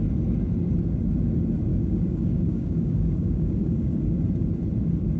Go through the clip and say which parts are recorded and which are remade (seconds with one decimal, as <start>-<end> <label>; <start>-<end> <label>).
0.0-1.7 recorded; 1.7-4.2 remade; 4.2-5.2 recorded